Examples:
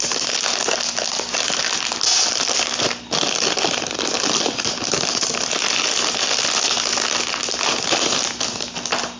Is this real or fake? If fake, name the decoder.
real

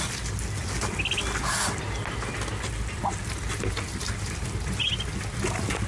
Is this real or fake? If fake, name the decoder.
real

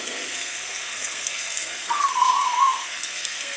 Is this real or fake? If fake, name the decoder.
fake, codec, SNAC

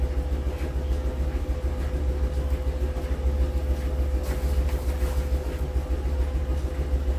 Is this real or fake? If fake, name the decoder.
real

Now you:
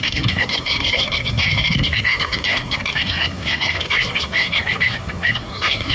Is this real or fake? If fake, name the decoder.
fake, codec, SNAC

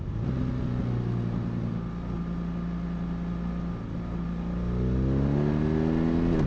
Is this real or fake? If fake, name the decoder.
real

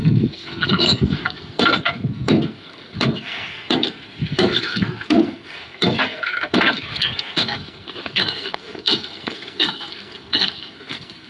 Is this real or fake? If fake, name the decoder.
fake, codec, SNAC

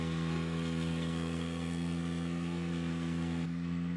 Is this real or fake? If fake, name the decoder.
fake, codec, SNAC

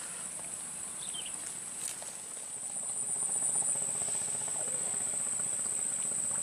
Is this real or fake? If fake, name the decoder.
real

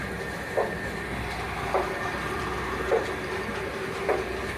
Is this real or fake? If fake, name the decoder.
real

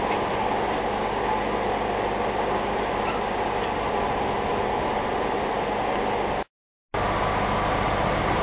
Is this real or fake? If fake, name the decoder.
real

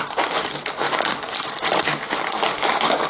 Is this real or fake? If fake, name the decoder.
real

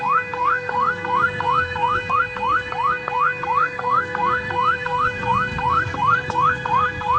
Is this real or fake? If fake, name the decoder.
fake, codec, SNAC